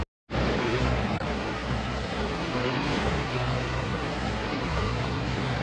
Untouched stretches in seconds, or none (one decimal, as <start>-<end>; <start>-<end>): 0.0-0.6